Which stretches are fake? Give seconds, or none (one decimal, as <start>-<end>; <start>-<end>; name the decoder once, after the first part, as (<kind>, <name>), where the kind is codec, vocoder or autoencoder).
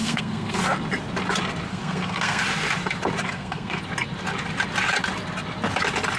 0.0-0.6 (codec, SNAC); 1.7-2.4; 3.2-3.8